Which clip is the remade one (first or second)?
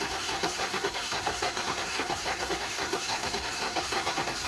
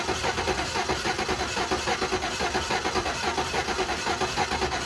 first